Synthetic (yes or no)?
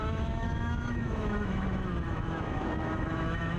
yes